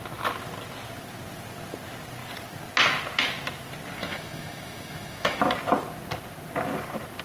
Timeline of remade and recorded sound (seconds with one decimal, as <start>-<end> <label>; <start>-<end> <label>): 0.0-4.0 recorded; 4.0-5.4 remade; 5.4-7.2 recorded